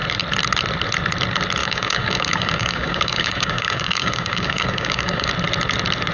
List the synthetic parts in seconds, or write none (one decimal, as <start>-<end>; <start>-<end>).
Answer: 1.6-5.3